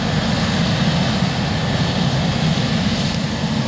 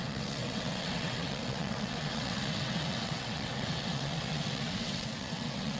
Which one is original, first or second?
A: first